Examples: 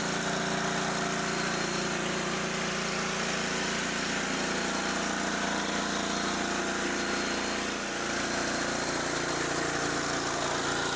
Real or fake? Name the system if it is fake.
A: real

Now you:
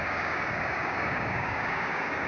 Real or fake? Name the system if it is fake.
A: fake, codec, DAC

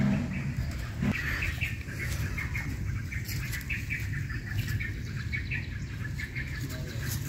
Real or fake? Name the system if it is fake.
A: real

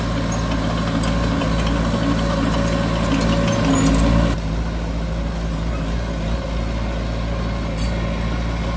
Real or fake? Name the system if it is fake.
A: real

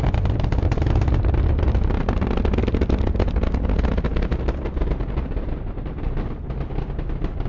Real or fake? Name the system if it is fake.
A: real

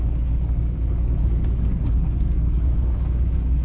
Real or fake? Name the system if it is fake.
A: fake, codec, DAC